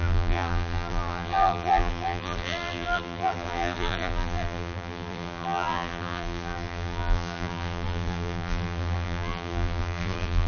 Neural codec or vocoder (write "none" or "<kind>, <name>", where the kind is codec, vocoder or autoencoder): vocoder, BigVGAN v2